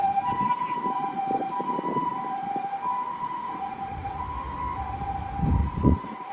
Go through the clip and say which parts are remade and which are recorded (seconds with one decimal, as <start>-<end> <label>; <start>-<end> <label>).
0.0-3.1 recorded; 3.1-4.2 remade; 4.2-5.6 recorded; 5.6-6.3 remade

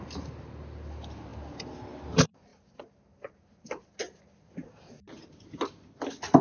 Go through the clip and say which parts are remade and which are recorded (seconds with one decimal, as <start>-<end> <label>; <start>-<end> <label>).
0.0-6.4 recorded

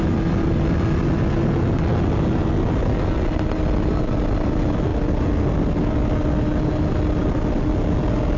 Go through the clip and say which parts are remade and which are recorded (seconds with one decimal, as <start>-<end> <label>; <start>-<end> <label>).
0.0-8.4 recorded

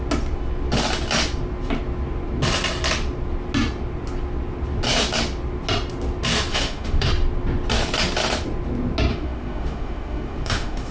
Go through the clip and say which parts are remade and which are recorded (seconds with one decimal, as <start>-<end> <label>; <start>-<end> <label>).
0.0-6.5 recorded; 6.5-7.1 remade; 7.1-9.1 recorded; 9.1-10.9 remade

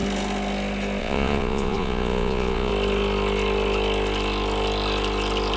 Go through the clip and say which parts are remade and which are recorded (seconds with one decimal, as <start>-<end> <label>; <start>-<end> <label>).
0.0-1.0 recorded; 1.0-2.7 remade; 2.7-5.6 recorded

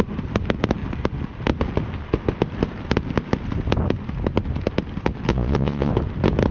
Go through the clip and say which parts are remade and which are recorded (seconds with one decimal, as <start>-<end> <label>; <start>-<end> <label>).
0.0-5.3 recorded; 5.3-5.9 remade; 5.9-6.5 recorded

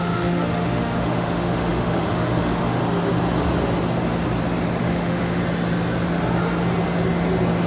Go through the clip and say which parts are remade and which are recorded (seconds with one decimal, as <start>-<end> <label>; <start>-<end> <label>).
0.0-2.8 remade; 2.8-4.8 recorded; 4.8-5.4 remade; 5.4-7.7 recorded

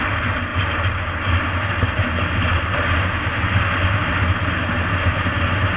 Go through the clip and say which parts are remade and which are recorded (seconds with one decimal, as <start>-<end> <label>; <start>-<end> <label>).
0.0-5.8 recorded